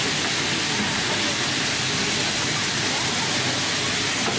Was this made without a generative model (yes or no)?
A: yes